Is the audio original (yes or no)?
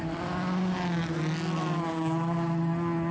yes